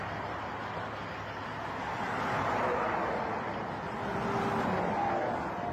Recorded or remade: recorded